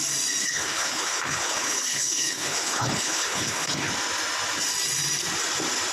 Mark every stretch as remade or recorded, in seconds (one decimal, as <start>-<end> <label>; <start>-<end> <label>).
0.0-0.4 recorded; 0.4-3.9 remade; 3.9-5.9 recorded